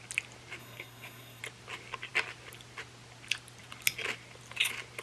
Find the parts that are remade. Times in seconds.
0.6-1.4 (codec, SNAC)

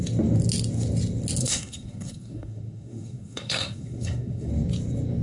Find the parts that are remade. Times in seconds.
1.4-4.5 (codec, SNAC)

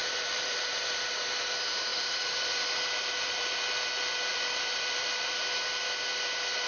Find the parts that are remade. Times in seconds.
0.0-0.6 (vocoder, BigVGAN v2); 1.9-3.6; 4.3-5.4

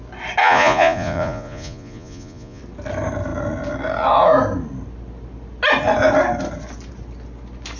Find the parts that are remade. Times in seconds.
0.4-2.6 (vocoder, Vocos)

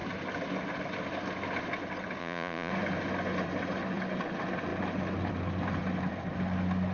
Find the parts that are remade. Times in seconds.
2.2-2.7 (vocoder, Vocos)

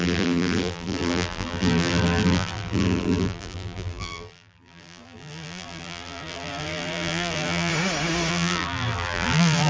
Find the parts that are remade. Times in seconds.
0.0-7.7 (vocoder, BigVGAN v2); 8.3-9.7

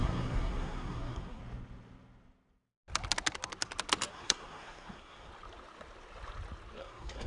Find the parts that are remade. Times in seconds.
0.0-1.4 (codec, SNAC); 4.1-5.3; 6.8-7.3

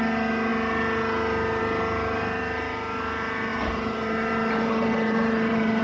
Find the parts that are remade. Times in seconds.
3.5-5.8 (vocoder, BigVGAN v2)